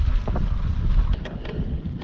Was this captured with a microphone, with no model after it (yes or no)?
yes